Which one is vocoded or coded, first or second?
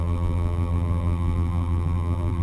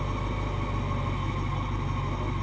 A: first